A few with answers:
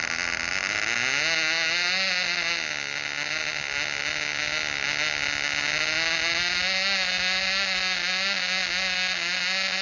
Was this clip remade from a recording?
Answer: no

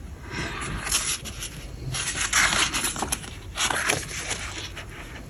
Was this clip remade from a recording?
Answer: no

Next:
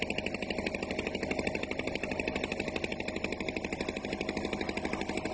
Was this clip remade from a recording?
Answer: no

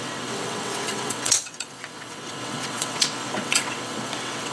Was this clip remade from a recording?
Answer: yes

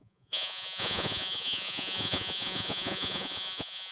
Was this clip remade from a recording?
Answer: yes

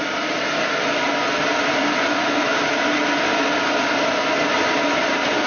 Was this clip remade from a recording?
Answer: no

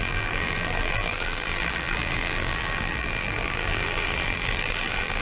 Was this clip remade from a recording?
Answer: yes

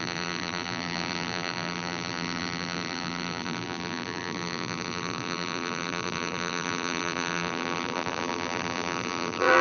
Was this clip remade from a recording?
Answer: yes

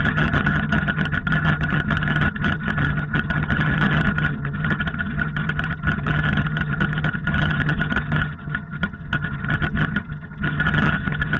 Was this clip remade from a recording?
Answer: yes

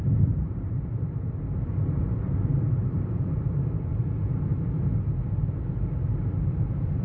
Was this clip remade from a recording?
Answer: yes